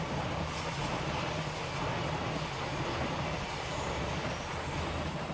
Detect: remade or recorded recorded